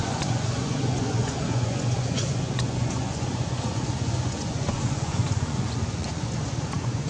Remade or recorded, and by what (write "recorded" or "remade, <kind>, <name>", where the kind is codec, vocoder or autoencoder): remade, vocoder, Vocos